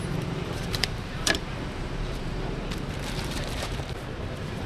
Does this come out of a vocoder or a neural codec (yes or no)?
yes